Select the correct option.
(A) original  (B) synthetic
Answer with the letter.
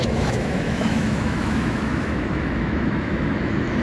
B